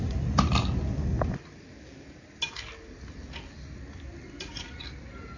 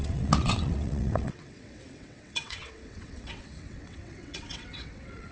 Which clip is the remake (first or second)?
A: second